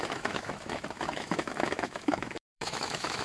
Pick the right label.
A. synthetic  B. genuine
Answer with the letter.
A